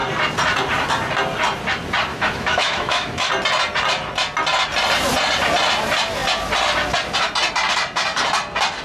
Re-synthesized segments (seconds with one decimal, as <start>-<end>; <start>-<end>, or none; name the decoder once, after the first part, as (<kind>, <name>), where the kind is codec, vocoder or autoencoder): 2.1-3.3 (autoencoder, DAC-VAE)